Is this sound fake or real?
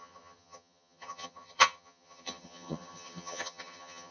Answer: fake